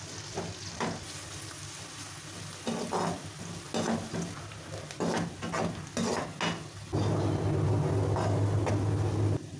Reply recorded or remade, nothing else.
recorded